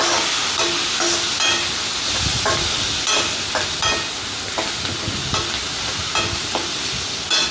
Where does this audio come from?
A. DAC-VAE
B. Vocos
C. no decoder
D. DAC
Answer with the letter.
C